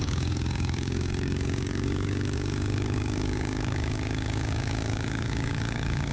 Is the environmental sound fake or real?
fake